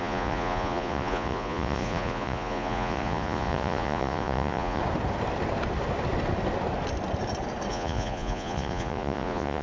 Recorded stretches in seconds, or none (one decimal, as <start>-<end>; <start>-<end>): 4.8-7.7